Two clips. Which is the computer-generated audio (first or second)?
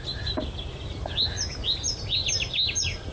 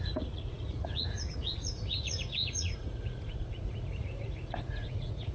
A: second